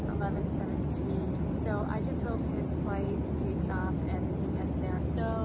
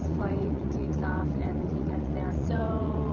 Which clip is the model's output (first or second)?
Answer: second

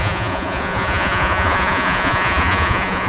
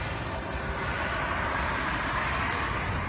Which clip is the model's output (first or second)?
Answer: first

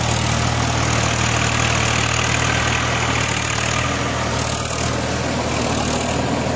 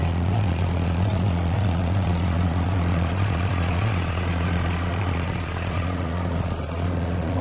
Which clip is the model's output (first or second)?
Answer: second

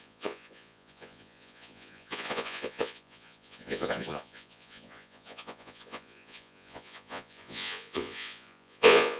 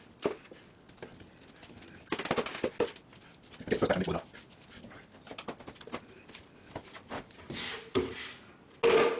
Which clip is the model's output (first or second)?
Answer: first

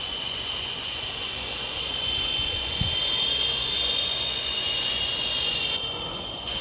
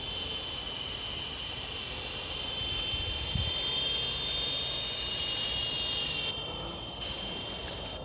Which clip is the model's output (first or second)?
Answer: first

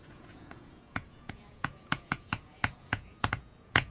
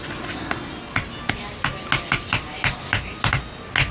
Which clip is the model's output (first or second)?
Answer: first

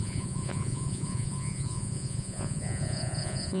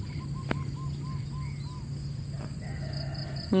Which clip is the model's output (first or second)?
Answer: first